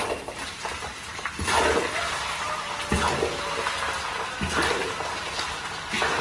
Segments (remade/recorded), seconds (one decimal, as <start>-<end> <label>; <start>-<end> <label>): 0.0-6.2 recorded